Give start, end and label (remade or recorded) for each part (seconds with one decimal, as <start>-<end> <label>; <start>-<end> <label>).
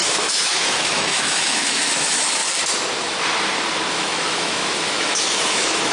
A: 0.0-2.4 remade; 2.4-3.9 recorded; 3.9-5.9 remade